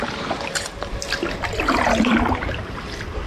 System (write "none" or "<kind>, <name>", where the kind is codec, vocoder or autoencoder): none